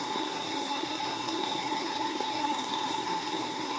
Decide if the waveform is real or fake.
fake